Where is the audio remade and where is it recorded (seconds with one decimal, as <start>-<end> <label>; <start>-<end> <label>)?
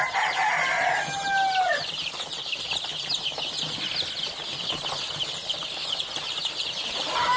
0.0-2.9 remade; 2.9-6.0 recorded; 6.0-7.4 remade